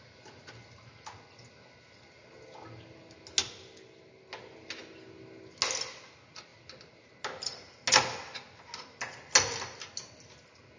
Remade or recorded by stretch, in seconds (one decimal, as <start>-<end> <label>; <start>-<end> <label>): 0.0-10.8 recorded